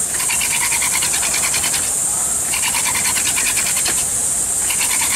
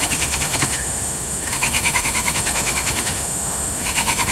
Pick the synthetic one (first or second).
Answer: second